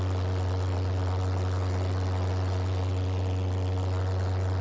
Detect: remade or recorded recorded